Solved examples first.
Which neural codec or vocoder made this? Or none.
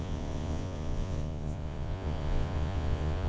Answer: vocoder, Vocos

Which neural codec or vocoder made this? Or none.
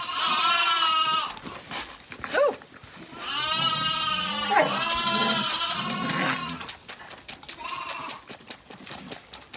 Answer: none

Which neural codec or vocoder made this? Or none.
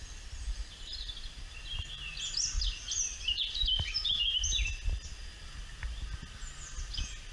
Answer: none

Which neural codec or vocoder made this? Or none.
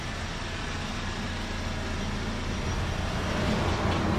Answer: none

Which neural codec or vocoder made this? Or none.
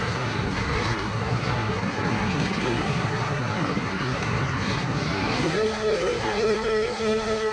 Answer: codec, SNAC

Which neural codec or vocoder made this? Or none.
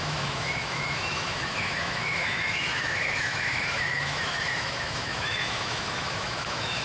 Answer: autoencoder, DAC-VAE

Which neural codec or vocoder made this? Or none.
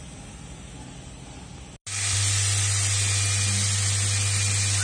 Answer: none